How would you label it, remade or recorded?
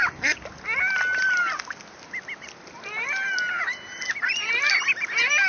recorded